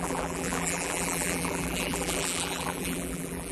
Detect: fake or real fake